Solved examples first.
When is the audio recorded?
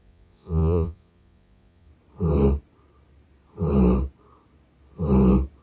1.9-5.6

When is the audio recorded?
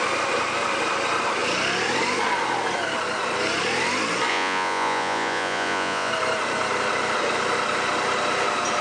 0.0-4.3; 6.1-8.8